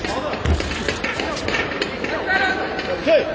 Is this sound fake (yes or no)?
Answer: no